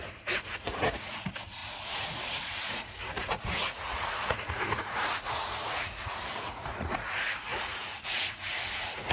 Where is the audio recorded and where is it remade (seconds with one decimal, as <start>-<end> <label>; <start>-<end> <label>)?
0.0-9.1 remade